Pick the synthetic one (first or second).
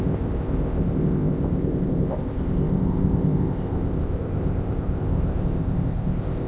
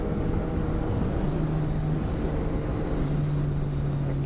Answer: first